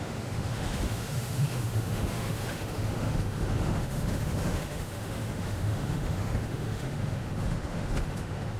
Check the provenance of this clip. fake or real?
fake